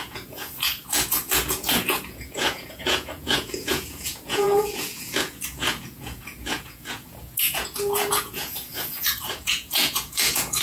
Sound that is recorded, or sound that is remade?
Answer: remade